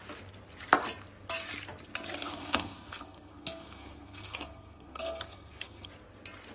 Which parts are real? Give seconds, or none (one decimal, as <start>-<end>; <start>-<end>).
0.0-2.2; 5.9-6.5